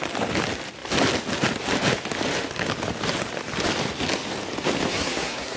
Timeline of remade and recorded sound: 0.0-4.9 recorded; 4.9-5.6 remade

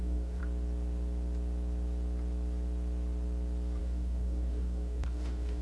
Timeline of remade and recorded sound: 0.0-0.4 remade; 0.4-3.8 recorded; 3.8-5.6 remade

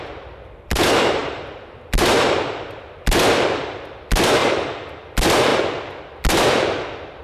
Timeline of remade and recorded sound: 0.0-5.5 remade; 5.5-6.1 recorded; 6.1-7.2 remade